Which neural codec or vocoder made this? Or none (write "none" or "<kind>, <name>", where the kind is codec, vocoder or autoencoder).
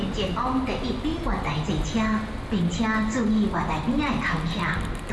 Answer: none